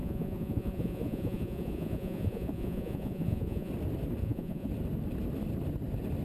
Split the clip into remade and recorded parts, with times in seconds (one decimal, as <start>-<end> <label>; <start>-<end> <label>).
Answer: 0.0-3.7 remade; 3.7-4.2 recorded; 4.2-4.7 remade; 4.7-6.2 recorded